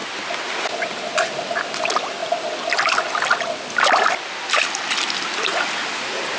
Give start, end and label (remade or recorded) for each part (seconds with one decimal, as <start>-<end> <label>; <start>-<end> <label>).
0.0-6.4 recorded

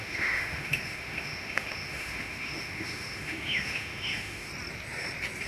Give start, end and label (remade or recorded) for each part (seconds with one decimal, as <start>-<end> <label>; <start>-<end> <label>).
0.0-4.5 remade; 4.5-5.5 recorded

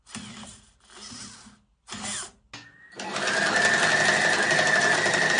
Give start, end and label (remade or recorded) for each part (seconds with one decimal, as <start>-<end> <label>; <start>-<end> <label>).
0.0-5.4 recorded

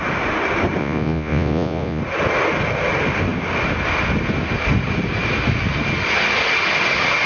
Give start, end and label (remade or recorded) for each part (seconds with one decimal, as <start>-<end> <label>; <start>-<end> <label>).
0.0-0.8 recorded; 0.8-2.0 remade; 2.0-7.3 recorded